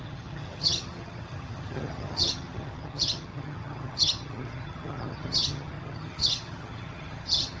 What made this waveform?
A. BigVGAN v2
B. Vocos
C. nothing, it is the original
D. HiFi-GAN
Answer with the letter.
D